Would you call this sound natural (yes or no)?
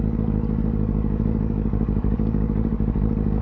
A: no